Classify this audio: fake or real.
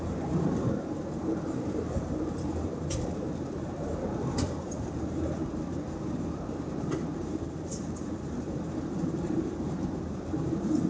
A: fake